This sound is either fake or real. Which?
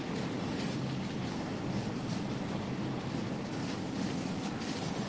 real